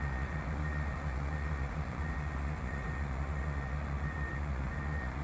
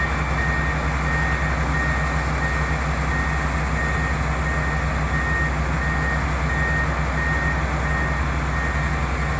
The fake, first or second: first